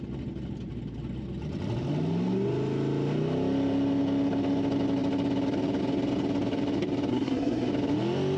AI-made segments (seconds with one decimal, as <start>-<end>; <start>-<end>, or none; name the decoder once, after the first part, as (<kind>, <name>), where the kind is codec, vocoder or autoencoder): 7.1-7.7 (codec, SNAC)